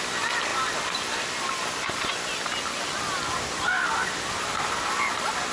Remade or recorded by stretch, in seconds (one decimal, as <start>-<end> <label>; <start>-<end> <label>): 0.0-0.5 recorded; 0.5-3.8 remade; 3.8-5.5 recorded